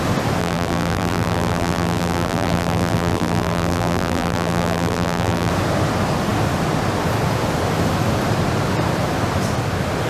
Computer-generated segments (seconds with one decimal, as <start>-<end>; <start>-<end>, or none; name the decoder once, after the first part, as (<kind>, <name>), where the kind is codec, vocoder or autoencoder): 0.4-5.5 (vocoder, BigVGAN v2)